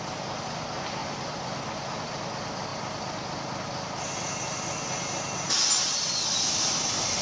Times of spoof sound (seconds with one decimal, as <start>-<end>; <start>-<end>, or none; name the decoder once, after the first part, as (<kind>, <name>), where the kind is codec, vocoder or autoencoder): none